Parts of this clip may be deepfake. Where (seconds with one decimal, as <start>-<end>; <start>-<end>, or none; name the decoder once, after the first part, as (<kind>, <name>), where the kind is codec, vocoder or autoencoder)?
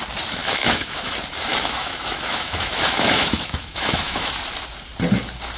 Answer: 0.4-1.1 (autoencoder, DAC-VAE); 1.5-4.3